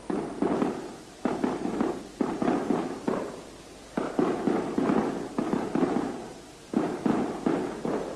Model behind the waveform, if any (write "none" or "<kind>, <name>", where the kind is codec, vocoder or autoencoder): none